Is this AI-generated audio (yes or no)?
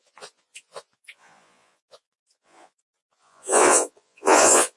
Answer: yes